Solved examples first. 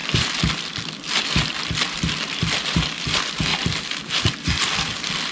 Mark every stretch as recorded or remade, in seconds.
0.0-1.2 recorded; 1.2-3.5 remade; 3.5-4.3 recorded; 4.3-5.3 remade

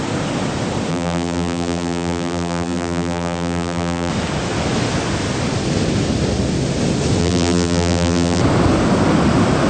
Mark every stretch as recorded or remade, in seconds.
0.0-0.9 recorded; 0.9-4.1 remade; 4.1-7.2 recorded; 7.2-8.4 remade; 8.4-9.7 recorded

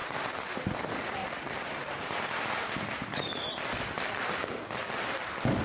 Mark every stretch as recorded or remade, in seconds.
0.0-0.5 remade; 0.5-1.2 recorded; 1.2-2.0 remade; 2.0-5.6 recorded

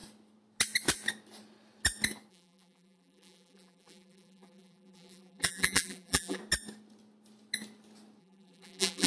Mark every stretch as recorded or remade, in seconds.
0.0-2.3 recorded; 2.3-6.4 remade; 6.4-8.2 recorded; 8.2-9.1 remade